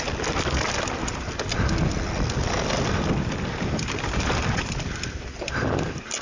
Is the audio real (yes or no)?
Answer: yes